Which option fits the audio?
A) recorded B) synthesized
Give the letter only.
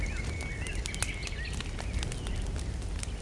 A